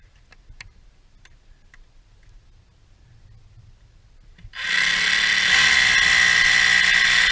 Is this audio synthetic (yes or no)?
no